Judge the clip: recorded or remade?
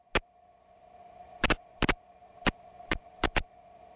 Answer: recorded